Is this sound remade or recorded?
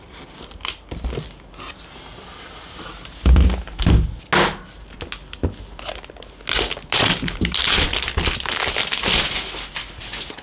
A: recorded